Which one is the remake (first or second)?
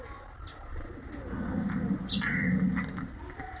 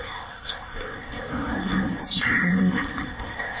second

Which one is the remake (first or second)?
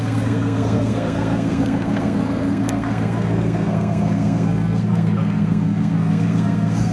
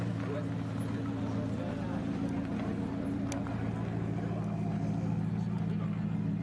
first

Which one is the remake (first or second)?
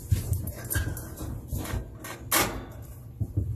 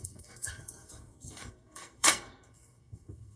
second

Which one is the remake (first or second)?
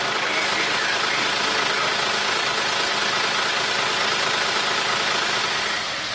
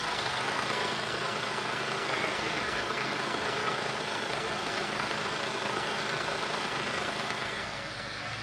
second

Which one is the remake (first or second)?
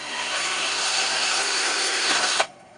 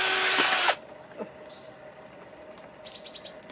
first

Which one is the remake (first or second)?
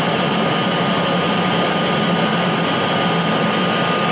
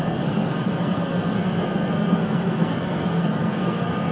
second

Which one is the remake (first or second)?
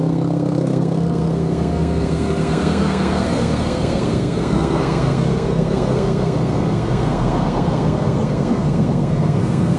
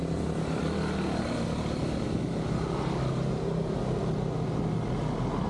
first